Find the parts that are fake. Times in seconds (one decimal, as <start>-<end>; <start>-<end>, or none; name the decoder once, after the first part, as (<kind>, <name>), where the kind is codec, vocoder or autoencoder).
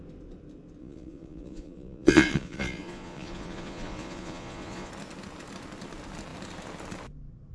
0.8-4.9 (vocoder, Vocos)